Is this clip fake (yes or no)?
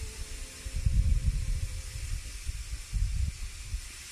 no